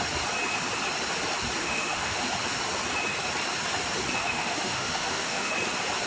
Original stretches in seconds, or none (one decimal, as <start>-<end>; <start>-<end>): 0.0-1.6; 2.2-4.2; 5.5-6.1